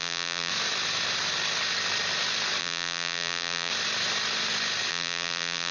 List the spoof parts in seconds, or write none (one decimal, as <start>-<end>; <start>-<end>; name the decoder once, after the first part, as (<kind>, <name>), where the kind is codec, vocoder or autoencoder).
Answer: 0.0-0.5 (vocoder, BigVGAN v2); 2.6-3.7; 4.9-5.7